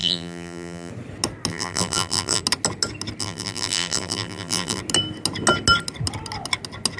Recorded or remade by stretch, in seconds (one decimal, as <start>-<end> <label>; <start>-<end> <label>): 0.0-0.9 remade; 0.9-1.5 recorded; 1.5-2.4 remade; 2.4-3.2 recorded; 3.2-4.8 remade; 4.8-7.0 recorded